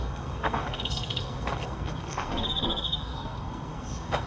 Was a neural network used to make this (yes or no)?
yes